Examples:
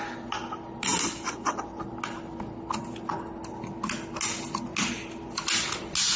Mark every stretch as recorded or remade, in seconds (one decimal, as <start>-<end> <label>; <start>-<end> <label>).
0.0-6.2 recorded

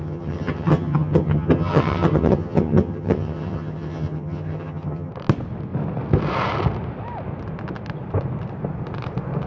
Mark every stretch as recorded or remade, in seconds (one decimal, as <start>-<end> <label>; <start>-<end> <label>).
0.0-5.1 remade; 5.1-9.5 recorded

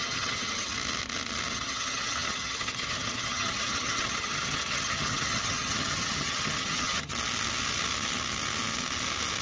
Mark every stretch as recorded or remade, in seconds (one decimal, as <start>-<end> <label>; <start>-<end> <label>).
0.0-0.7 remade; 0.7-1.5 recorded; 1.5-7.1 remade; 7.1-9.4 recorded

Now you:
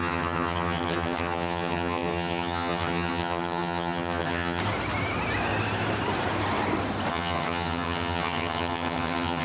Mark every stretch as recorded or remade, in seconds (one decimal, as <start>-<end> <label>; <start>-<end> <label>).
0.0-4.6 remade; 4.6-7.1 recorded; 7.1-9.4 remade

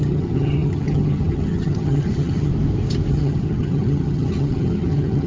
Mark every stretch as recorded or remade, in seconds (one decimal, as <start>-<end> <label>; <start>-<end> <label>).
0.0-2.5 remade; 2.5-3.1 recorded; 3.1-5.3 remade